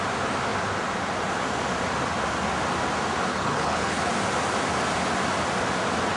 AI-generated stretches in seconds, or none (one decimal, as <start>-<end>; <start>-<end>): 3.3-4.1